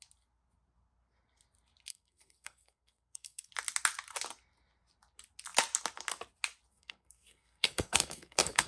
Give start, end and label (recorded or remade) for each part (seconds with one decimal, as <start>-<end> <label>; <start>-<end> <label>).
0.0-1.9 recorded; 1.9-3.5 remade; 3.5-6.7 recorded; 6.7-8.7 remade